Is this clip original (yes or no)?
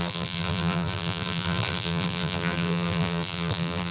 no